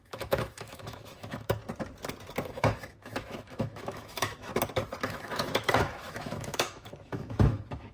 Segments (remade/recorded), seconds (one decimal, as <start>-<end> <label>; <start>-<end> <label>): 0.0-1.6 remade; 1.6-2.5 recorded; 2.5-4.5 remade; 4.5-5.1 recorded; 5.1-7.9 remade